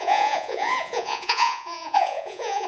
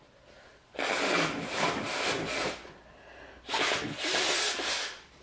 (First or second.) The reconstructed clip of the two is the first